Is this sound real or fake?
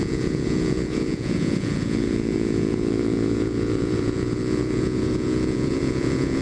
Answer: fake